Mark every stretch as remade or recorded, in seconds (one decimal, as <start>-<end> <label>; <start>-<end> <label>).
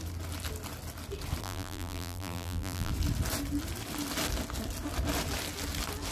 0.0-1.4 recorded; 1.4-2.9 remade; 2.9-6.1 recorded